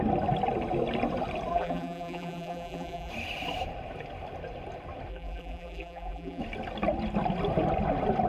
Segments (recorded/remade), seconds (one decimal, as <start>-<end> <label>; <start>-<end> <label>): 0.0-1.5 recorded; 1.5-3.1 remade; 3.1-5.1 recorded; 5.1-6.4 remade; 6.4-8.3 recorded